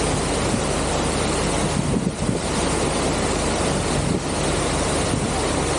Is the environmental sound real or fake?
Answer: real